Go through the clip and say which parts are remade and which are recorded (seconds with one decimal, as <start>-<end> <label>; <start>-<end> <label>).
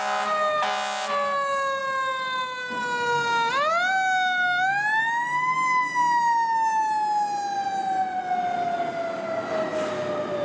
0.0-10.4 recorded